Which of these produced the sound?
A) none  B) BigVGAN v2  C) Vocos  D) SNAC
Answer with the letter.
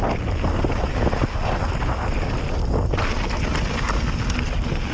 A